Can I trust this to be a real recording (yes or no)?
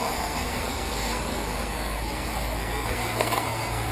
no